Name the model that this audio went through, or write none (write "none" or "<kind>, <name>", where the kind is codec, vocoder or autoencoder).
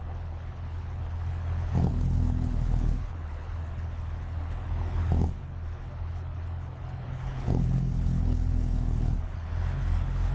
codec, HILCodec